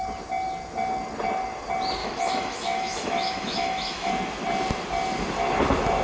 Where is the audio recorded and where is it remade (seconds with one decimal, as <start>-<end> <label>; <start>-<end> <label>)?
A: 0.0-2.0 recorded; 2.0-4.1 remade; 4.1-6.0 recorded